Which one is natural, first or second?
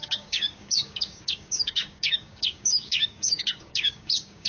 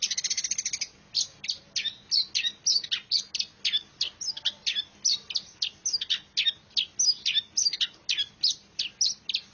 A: second